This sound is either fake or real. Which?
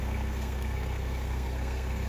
fake